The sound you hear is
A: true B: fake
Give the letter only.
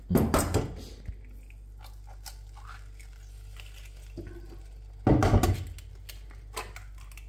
A